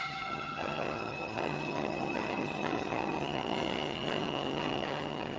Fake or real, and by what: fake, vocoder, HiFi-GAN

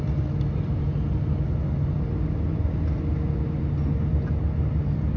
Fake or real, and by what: real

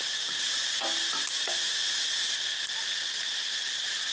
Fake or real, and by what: real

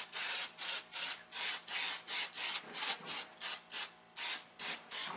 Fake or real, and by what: real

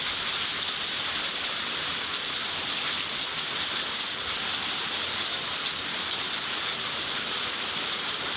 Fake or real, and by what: real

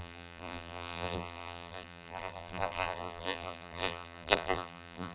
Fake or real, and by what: fake, vocoder, BigVGAN v2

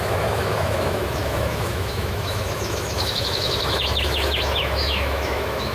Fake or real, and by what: fake, autoencoder, DAC-VAE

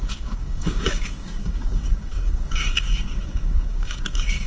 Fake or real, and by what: fake, codec, DAC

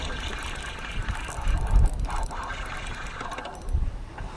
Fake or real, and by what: real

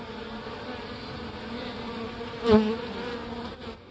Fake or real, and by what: real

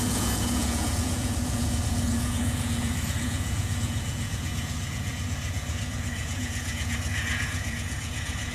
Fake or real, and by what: fake, vocoder, Vocos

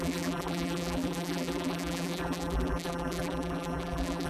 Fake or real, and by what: fake, vocoder, BigVGAN v2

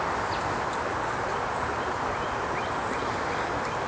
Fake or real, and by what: real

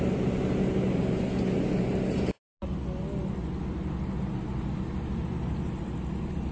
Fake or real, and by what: real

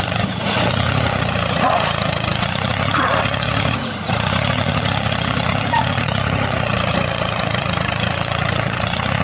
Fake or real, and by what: fake, vocoder, Vocos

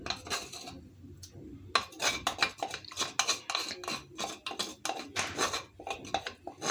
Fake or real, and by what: real